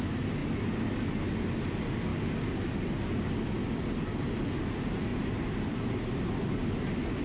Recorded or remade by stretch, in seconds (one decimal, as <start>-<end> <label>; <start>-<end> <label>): 0.0-7.2 recorded